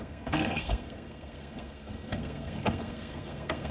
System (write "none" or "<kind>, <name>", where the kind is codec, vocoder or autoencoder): codec, SNAC